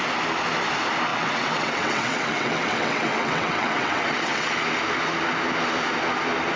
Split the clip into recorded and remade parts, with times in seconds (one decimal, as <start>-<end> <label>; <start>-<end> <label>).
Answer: 0.0-1.1 recorded; 1.1-4.5 remade; 4.5-6.6 recorded